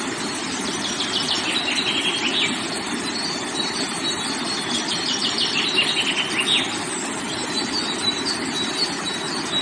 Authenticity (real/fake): real